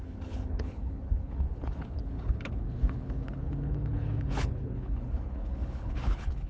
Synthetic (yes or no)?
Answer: yes